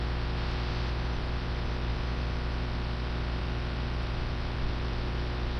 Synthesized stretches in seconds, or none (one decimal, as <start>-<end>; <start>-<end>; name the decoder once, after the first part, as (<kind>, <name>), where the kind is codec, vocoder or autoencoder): none